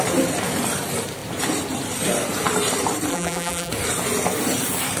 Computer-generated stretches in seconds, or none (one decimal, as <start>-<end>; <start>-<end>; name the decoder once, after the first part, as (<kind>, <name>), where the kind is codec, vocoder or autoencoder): 3.1-3.7 (vocoder, BigVGAN v2)